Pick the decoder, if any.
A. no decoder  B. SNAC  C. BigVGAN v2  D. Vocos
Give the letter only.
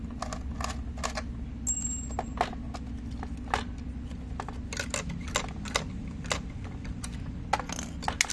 A